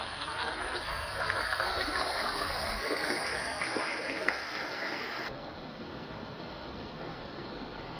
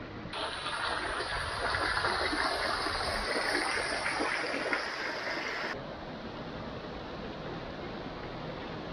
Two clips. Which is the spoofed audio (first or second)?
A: first